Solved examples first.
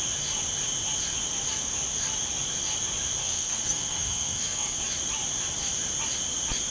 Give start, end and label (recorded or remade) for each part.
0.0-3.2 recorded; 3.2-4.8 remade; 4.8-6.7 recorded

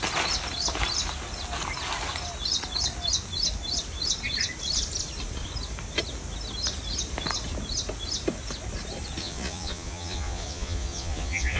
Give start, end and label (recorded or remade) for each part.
0.0-9.2 recorded; 9.2-11.6 remade

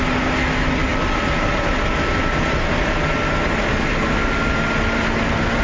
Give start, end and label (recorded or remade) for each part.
0.0-5.6 recorded

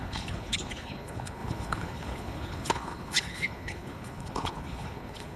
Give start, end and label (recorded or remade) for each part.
0.0-5.4 remade

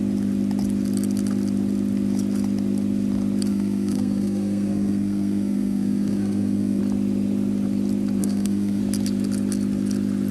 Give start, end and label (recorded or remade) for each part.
0.0-3.5 recorded; 3.5-6.8 remade; 6.8-8.2 recorded; 8.2-8.8 remade; 8.8-10.3 recorded